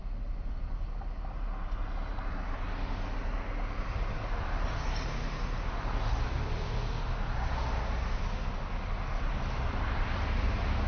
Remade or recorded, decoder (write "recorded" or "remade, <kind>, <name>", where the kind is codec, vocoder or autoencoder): recorded